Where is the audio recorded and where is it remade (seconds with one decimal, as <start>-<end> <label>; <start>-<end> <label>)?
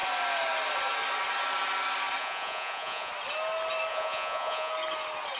0.0-2.2 recorded; 2.2-3.1 remade; 3.1-3.9 recorded; 3.9-4.7 remade; 4.7-5.4 recorded